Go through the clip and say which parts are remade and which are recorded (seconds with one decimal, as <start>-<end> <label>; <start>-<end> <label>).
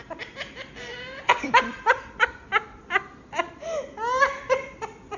0.0-2.5 remade; 2.5-4.2 recorded; 4.2-5.2 remade